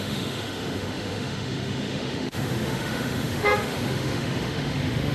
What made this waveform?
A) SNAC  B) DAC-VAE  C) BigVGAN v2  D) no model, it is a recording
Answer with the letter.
B